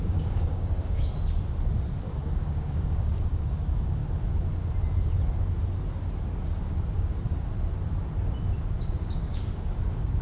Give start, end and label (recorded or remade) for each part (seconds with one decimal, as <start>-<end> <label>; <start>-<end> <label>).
0.0-1.1 remade; 1.1-2.1 recorded; 2.1-4.0 remade; 4.0-8.6 recorded; 8.6-10.2 remade